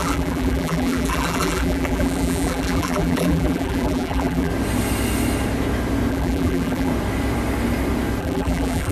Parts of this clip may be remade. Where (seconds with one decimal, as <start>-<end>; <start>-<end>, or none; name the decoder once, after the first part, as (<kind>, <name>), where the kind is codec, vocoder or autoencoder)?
0.0-4.5 (vocoder, BigVGAN v2); 6.1-6.9; 8.2-8.9